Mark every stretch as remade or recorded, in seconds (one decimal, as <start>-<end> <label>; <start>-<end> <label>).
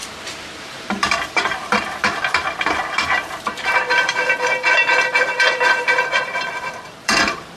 0.0-0.6 recorded; 0.6-7.6 remade